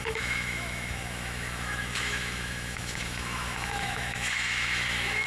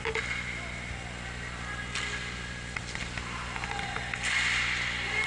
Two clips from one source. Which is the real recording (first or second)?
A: second